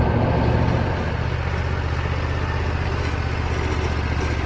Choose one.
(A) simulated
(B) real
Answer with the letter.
B